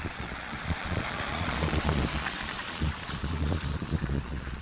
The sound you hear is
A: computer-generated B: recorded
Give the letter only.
A